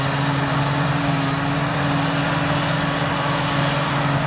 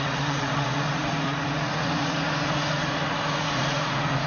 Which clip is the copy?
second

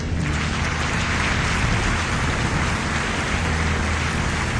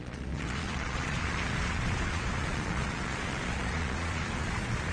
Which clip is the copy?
second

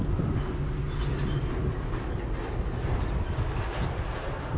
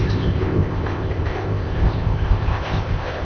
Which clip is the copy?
second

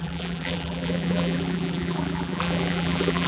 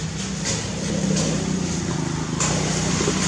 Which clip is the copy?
first